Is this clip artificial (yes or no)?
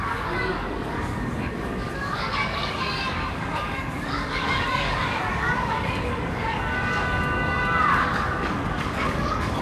yes